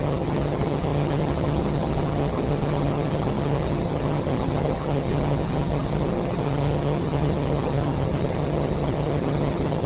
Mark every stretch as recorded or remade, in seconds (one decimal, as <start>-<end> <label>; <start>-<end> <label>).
0.0-9.9 remade

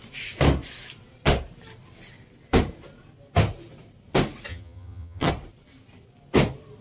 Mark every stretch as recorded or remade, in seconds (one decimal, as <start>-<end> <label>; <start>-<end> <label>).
0.0-4.5 recorded; 4.5-5.3 remade; 5.3-6.8 recorded